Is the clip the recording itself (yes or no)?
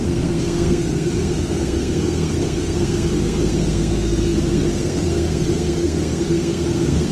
no